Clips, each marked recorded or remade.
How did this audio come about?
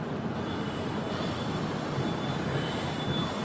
recorded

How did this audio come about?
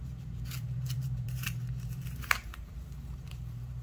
remade